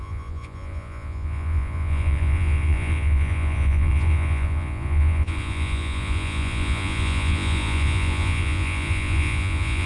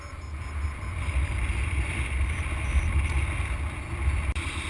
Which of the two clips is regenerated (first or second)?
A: first